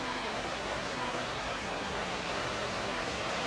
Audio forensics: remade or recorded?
remade